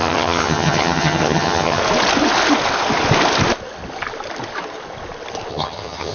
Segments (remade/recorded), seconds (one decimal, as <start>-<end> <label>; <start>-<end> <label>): 0.0-1.8 remade; 1.8-5.5 recorded; 5.5-6.1 remade